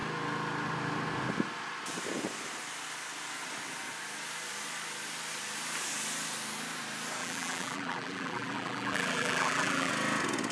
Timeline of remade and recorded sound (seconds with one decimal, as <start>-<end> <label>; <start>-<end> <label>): 0.0-7.2 recorded; 7.2-9.9 remade; 9.9-10.5 recorded